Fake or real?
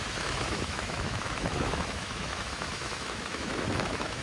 fake